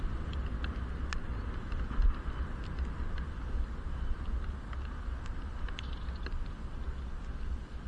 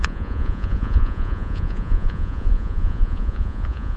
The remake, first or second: second